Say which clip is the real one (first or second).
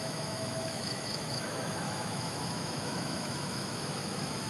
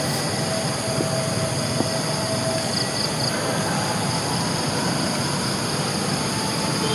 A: second